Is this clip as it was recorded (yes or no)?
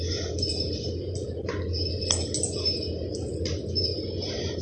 yes